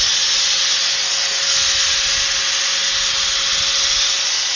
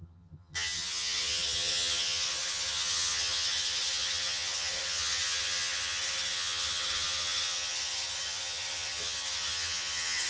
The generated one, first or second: second